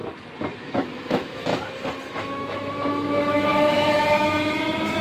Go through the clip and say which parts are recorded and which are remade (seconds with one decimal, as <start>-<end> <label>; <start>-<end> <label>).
0.0-0.6 recorded; 0.6-1.5 remade; 1.5-2.1 recorded; 2.1-5.0 remade